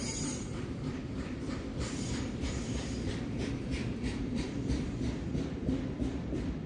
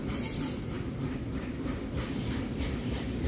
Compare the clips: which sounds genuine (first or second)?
second